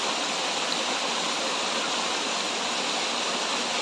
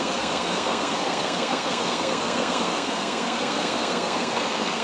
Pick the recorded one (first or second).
first